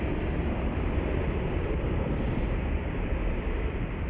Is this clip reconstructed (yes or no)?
no